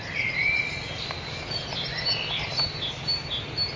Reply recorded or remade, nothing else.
recorded